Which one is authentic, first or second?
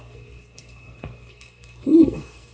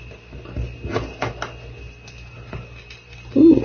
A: second